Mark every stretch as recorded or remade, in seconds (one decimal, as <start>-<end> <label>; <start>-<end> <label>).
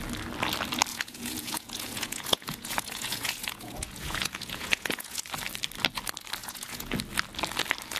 0.0-0.9 recorded; 0.9-5.2 remade; 5.2-6.4 recorded; 6.4-6.9 remade; 6.9-8.0 recorded